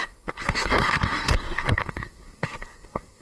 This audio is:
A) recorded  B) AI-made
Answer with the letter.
B